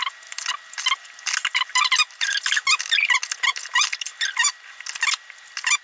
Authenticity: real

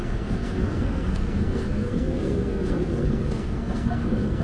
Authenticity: fake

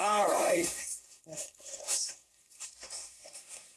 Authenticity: fake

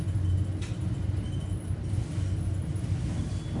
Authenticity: real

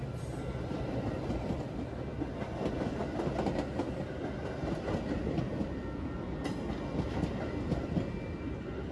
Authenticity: real